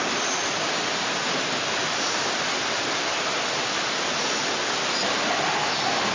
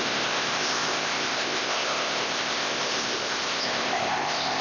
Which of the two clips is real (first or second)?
first